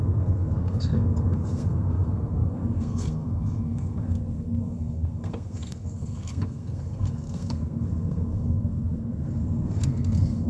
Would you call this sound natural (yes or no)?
no